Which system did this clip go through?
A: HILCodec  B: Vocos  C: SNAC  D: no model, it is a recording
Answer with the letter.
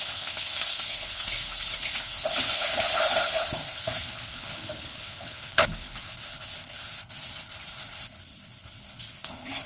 A